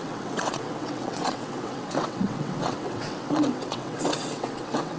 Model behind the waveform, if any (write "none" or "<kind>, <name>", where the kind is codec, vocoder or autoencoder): vocoder, WaveNeXt